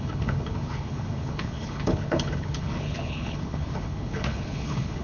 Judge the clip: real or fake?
fake